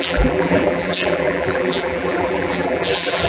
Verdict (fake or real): fake